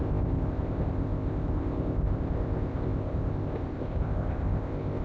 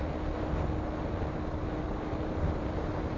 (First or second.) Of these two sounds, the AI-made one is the first